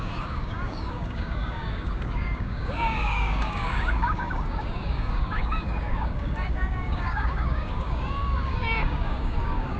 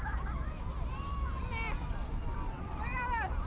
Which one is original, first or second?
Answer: second